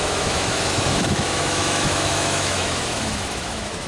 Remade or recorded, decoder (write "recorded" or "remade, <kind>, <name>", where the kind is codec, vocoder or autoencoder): remade, autoencoder, DAC-VAE